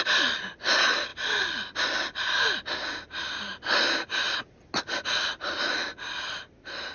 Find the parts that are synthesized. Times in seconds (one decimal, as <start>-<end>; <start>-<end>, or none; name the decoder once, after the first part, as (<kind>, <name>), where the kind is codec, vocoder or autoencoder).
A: none